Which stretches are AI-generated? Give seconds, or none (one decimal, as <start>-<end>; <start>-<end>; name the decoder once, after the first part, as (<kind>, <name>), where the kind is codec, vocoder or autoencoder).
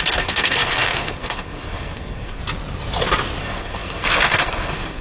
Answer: 0.0-2.4 (codec, SNAC); 3.4-5.0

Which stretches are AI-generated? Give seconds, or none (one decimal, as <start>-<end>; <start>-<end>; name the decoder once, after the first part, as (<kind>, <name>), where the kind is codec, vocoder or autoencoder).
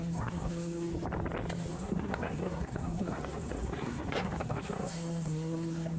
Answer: 0.0-0.9 (codec, SNAC); 1.7-6.0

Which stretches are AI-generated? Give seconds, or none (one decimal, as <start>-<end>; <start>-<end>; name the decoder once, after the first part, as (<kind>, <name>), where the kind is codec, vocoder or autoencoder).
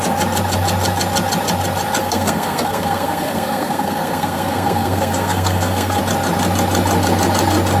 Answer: 2.0-6.0 (codec, SNAC)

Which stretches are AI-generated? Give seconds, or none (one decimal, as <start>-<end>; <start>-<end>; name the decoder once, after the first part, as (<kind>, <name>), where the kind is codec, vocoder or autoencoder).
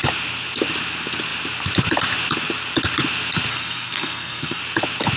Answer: 3.5-4.6 (codec, SNAC)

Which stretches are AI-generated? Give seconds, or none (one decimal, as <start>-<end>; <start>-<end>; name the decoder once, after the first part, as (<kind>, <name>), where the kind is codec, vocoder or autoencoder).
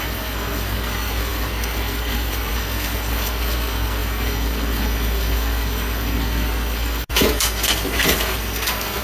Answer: 0.0-9.0 (codec, SNAC)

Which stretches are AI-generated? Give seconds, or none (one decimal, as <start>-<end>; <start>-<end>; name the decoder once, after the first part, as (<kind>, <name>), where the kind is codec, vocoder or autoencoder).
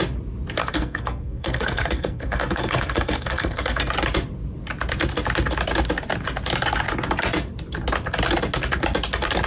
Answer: 0.6-3.9 (codec, SNAC)